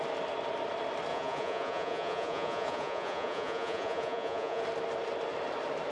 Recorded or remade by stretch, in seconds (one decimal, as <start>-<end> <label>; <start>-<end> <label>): 0.0-1.1 recorded; 1.1-4.6 remade; 4.6-5.9 recorded